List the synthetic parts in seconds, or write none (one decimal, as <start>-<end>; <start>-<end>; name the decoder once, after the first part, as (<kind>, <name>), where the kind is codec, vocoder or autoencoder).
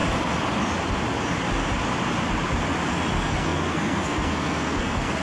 3.1-5.2 (codec, SNAC)